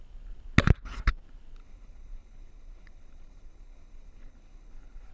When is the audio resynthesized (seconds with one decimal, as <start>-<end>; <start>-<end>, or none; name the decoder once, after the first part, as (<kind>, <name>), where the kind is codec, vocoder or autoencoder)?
1.6-5.1 (codec, HILCodec)